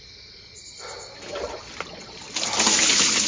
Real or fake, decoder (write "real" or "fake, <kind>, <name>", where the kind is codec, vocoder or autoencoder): real